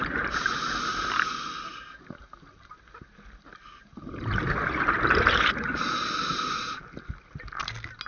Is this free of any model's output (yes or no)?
yes